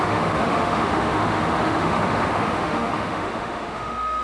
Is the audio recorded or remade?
remade